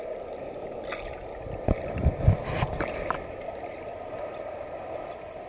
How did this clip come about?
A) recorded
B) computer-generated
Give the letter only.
A